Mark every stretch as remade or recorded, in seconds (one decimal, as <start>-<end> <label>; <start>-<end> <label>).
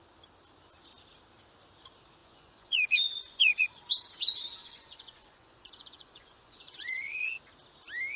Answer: 0.0-2.2 recorded; 2.2-3.8 remade; 3.8-4.6 recorded; 4.6-7.3 remade; 7.3-8.2 recorded